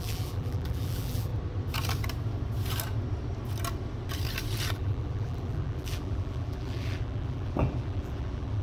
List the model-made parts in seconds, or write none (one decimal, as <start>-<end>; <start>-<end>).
0.0-1.3; 4.7-8.6